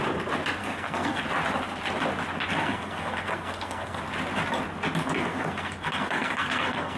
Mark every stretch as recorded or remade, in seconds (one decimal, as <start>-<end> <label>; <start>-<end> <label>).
0.0-0.6 recorded; 0.6-1.2 remade; 1.2-2.6 recorded; 2.6-4.0 remade; 4.0-5.3 recorded; 5.3-7.0 remade